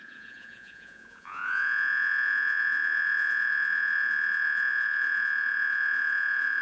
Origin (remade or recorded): remade